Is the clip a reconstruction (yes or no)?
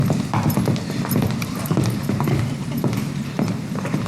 yes